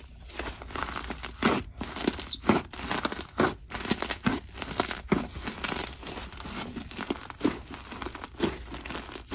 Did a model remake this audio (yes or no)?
no